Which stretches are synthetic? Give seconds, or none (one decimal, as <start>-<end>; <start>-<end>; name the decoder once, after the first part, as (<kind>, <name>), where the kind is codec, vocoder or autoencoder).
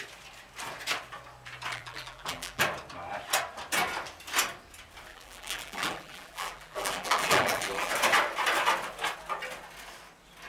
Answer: 1.7-2.6 (vocoder, BigVGAN v2); 5.1-7.9